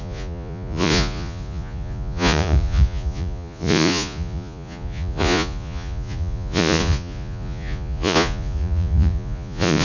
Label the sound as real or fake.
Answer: fake